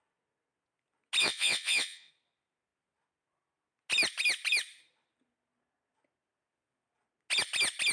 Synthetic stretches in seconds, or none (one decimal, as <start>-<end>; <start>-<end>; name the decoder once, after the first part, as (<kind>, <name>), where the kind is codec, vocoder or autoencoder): 1.2-2.1 (vocoder, WaveNeXt)